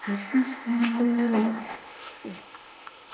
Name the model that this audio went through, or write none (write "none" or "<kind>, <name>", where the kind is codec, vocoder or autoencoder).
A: codec, ZipCodec